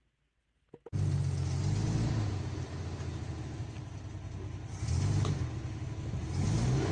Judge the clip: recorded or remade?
recorded